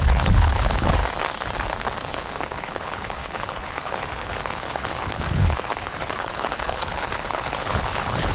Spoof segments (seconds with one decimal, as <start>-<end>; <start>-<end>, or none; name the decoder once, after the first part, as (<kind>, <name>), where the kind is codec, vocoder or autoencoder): 0.0-1.0 (codec, HILCodec); 2.1-8.3